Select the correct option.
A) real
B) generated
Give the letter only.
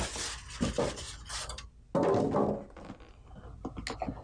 A